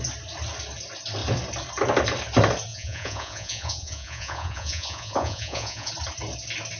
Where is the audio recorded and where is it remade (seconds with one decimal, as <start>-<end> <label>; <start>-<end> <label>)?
0.0-2.7 recorded; 2.7-5.9 remade; 5.9-6.8 recorded